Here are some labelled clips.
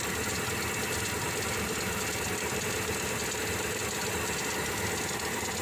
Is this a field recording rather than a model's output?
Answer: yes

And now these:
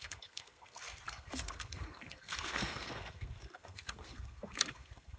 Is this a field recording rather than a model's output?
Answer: no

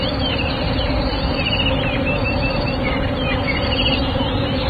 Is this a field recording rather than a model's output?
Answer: yes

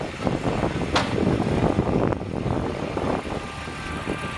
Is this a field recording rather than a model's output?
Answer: yes